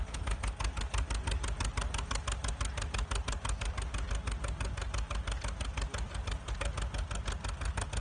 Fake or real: real